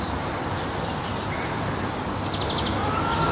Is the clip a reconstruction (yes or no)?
no